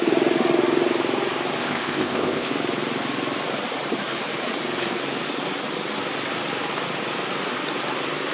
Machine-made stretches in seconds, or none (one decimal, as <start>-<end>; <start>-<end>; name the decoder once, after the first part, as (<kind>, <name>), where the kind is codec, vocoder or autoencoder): 1.6-2.5 (codec, ZipCodec)